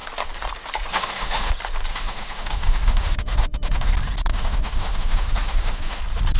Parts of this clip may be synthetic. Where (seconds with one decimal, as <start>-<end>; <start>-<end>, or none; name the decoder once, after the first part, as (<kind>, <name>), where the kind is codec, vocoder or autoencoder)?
0.9-1.5 (autoencoder, DAC-VAE); 1.9-3.9; 4.3-6.0